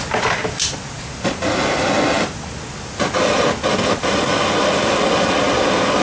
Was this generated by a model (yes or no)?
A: no